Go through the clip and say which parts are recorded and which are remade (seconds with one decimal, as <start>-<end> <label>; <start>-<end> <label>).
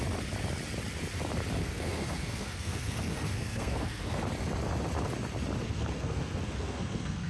0.0-1.6 recorded; 1.6-4.2 remade; 4.2-5.6 recorded; 5.6-7.3 remade